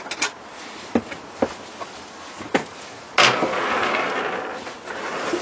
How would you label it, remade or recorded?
recorded